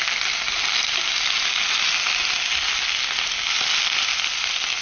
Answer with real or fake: real